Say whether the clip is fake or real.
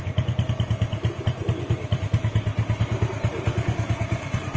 real